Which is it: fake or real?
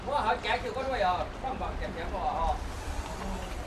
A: real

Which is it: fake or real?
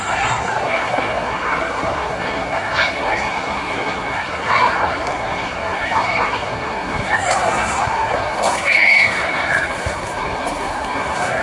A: fake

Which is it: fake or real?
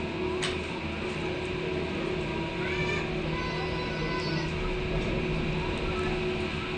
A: real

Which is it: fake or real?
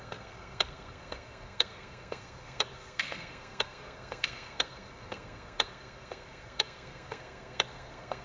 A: fake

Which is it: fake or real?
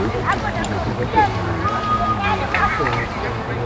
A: real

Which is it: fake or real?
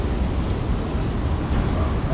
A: real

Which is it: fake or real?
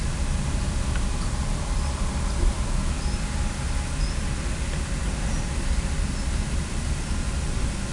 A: real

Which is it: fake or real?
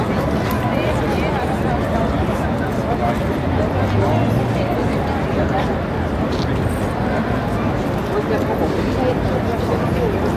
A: real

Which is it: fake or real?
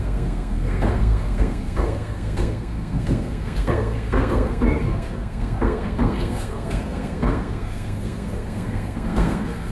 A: fake